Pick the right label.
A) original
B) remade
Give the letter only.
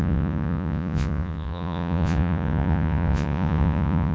B